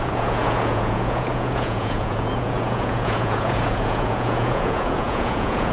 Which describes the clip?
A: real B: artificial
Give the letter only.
B